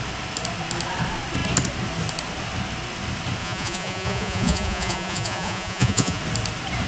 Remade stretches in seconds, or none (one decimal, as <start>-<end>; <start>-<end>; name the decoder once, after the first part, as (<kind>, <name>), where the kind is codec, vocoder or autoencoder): 3.4-6.2 (vocoder, Vocos)